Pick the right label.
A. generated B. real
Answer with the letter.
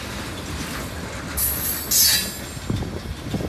B